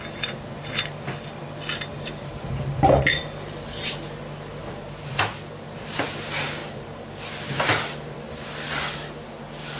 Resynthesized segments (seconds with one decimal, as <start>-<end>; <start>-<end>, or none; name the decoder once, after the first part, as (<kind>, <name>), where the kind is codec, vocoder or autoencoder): 1.9-3.9 (vocoder, BigVGAN v2); 4.6-5.2; 6.6-7.2